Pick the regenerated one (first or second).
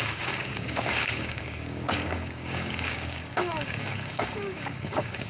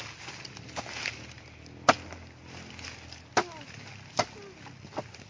first